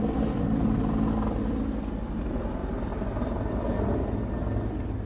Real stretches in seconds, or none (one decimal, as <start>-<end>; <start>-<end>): 0.0-5.1